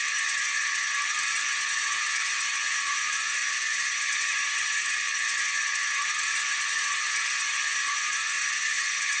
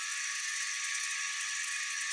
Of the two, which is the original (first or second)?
second